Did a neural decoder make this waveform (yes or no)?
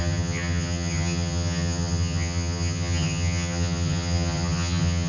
yes